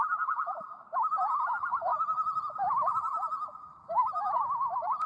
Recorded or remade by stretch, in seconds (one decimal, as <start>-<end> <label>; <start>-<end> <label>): 0.0-3.1 remade; 3.1-3.7 recorded; 3.7-5.1 remade